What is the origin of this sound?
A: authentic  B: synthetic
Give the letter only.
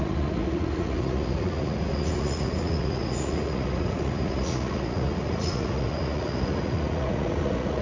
B